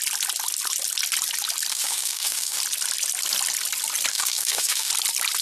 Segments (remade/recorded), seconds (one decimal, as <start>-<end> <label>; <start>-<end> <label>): 0.0-1.7 recorded; 1.7-2.6 remade; 2.6-4.1 recorded; 4.1-4.9 remade; 4.9-5.4 recorded